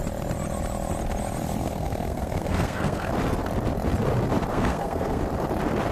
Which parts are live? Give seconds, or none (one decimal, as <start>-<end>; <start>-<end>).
0.0-1.6; 3.1-4.5; 5.2-5.9